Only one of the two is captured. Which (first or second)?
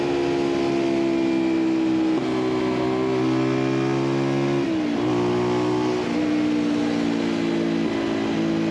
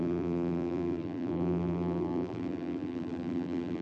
first